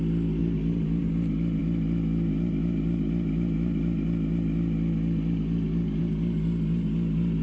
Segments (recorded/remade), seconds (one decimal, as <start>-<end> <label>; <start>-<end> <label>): 0.0-0.4 recorded; 0.4-1.1 remade; 1.1-7.4 recorded